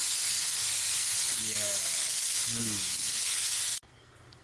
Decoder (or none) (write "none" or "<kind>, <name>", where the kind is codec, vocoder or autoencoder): codec, SNAC